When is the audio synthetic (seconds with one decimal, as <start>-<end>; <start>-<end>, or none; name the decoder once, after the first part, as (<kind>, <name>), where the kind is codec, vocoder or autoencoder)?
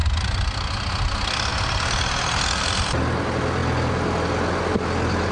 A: none